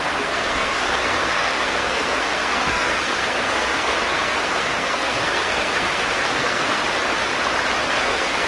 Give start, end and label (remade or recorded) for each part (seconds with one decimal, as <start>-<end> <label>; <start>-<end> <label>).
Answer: 0.0-6.8 remade; 6.8-7.9 recorded; 7.9-8.5 remade